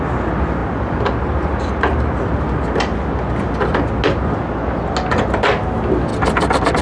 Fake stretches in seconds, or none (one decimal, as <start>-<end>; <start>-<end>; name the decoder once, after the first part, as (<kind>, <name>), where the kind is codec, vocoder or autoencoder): 6.1-6.8 (vocoder, BigVGAN v2)